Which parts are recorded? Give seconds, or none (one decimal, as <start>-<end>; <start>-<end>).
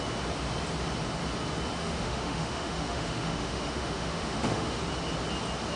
0.0-1.8; 4.8-5.8